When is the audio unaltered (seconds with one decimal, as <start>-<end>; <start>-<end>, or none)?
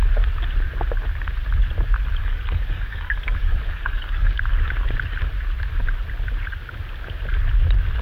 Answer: 0.0-2.2; 4.4-8.0